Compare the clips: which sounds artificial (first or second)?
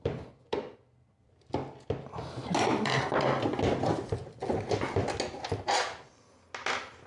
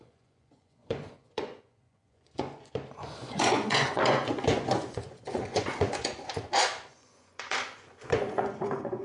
second